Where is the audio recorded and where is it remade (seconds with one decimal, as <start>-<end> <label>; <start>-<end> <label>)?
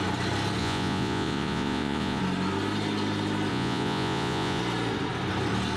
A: 0.0-0.6 recorded; 0.6-2.2 remade; 2.2-3.5 recorded; 3.5-4.6 remade; 4.6-5.8 recorded